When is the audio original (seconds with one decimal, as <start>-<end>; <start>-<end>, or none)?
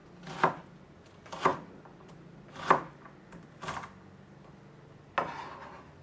0.0-6.0